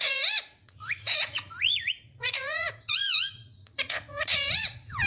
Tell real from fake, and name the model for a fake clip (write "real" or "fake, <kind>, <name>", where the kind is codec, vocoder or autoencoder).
fake, vocoder, Vocos